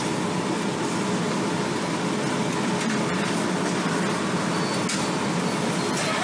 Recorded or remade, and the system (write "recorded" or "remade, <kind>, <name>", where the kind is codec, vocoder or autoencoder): recorded